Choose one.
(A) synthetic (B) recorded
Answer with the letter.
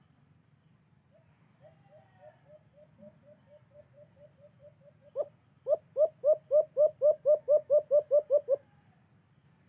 B